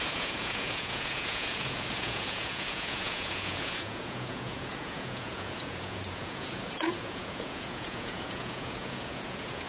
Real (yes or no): no